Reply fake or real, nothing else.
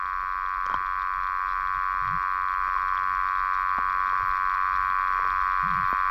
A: real